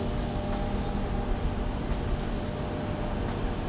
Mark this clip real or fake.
real